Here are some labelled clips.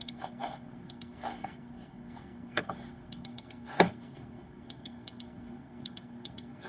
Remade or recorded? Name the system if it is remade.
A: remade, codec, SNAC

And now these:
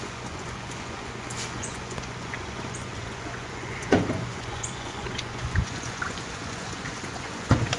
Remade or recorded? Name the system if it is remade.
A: remade, vocoder, Vocos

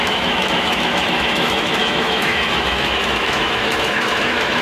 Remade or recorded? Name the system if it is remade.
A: remade, autoencoder, DAC-VAE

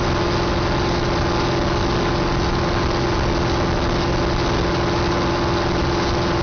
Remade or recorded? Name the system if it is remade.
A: recorded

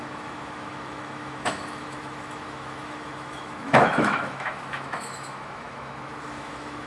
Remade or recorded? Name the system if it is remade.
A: remade, autoencoder, DAC-VAE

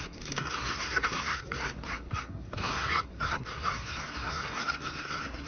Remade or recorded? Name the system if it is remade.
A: remade, codec, SNAC